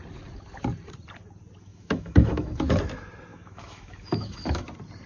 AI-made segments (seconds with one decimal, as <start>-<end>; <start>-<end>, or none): 1.7-2.8; 3.3-4.6